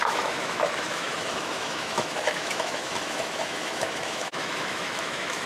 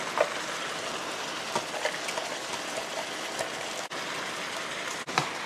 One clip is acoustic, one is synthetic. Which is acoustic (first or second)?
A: second